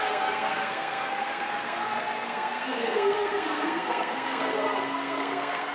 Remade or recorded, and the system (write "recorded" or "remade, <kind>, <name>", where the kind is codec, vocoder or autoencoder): remade, codec, SNAC